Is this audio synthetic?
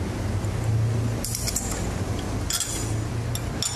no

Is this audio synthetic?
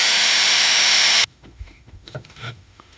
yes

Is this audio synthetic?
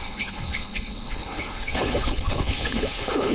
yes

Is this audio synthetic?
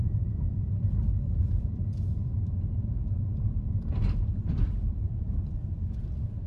yes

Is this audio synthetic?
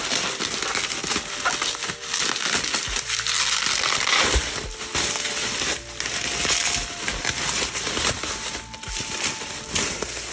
no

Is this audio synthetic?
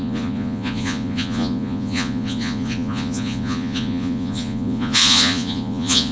yes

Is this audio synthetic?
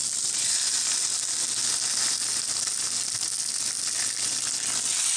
no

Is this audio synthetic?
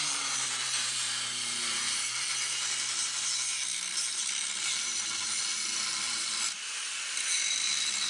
yes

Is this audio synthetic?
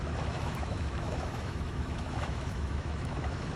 yes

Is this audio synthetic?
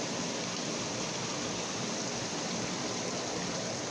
no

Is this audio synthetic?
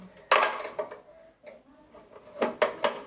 no